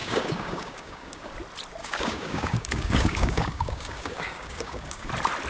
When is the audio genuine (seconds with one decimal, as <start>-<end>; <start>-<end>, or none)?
1.3-1.8; 5.1-5.5